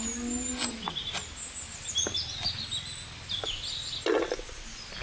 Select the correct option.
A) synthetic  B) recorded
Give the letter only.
B